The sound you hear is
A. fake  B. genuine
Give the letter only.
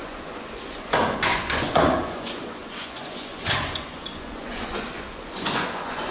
A